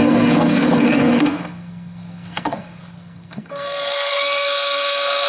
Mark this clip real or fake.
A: fake